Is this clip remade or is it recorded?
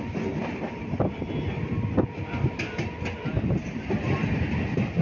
recorded